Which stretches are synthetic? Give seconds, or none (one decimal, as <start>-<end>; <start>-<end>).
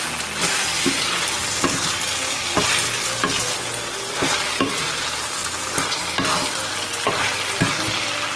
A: none